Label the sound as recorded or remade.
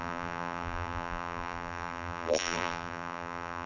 remade